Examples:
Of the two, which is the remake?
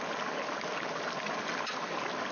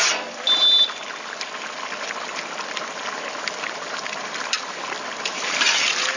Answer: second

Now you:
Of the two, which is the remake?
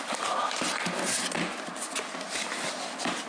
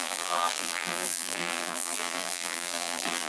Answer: second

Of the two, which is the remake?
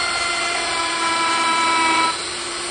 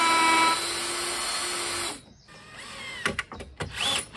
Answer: first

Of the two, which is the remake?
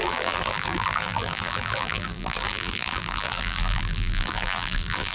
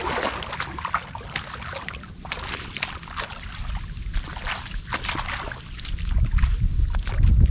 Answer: first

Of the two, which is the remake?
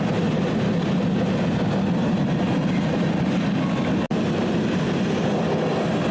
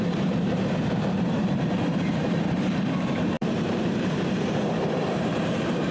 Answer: second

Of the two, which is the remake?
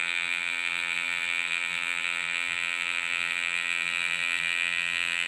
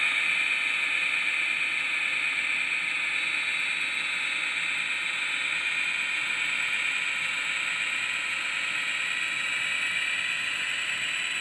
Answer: first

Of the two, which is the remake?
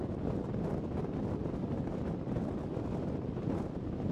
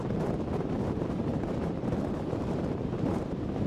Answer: second